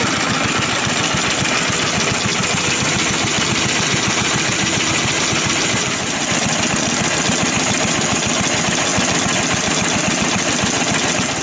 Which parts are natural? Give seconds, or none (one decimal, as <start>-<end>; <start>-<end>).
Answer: 0.0-11.4